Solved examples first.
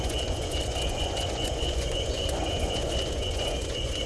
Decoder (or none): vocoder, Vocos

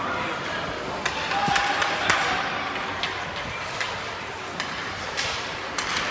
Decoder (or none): none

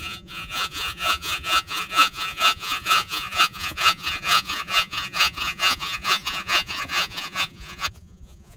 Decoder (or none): vocoder, Vocos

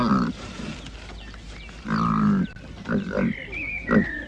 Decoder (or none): none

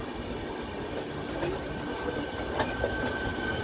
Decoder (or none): none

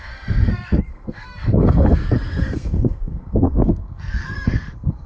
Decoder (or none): codec, SNAC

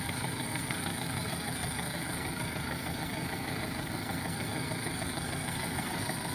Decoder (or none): codec, SNAC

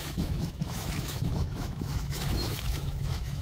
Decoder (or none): autoencoder, DAC-VAE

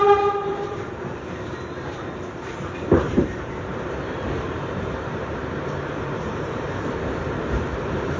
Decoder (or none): vocoder, BigVGAN v2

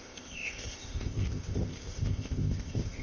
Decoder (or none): codec, ZipCodec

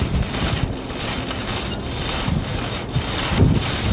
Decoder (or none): none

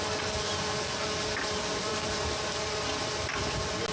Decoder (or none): none